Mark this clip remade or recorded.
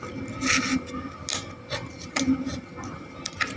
recorded